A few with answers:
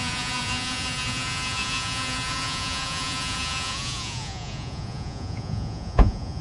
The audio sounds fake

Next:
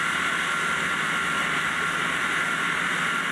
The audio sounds real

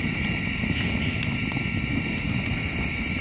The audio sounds real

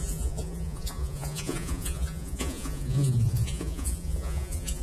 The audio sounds fake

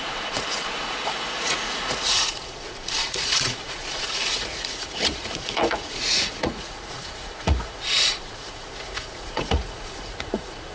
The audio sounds fake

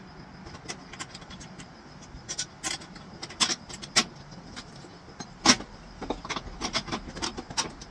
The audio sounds real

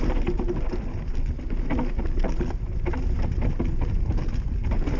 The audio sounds real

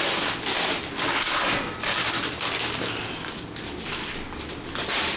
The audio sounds real